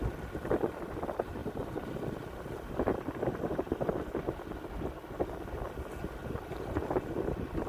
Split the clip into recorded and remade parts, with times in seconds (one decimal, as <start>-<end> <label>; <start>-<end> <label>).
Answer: 0.0-7.7 recorded